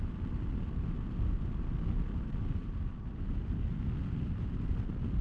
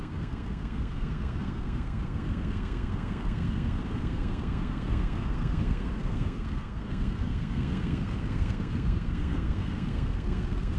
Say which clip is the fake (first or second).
second